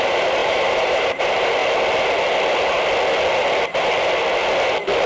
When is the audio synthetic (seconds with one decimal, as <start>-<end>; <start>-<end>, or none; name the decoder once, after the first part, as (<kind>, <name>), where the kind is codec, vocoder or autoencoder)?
0.0-1.6 (vocoder, BigVGAN v2)